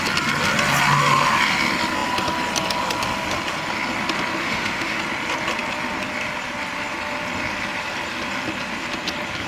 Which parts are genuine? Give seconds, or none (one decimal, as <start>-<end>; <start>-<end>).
0.0-4.4; 5.0-9.5